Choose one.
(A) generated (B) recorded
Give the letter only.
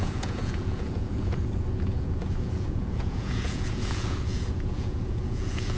A